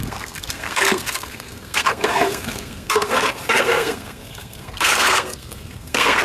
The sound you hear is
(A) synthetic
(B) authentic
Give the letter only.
A